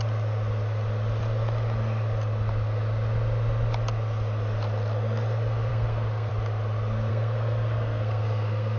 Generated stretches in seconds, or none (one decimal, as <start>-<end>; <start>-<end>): 5.7-6.3; 7.1-8.8

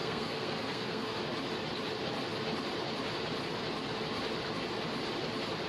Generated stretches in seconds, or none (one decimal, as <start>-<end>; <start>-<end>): 0.0-1.2

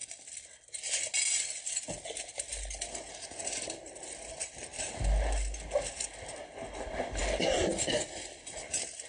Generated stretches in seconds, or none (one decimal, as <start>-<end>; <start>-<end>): none